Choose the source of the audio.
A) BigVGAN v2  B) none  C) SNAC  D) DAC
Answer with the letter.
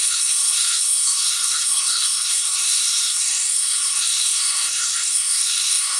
C